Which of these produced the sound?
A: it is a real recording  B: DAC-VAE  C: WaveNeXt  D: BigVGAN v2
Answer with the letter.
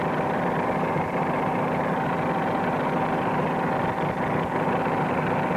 A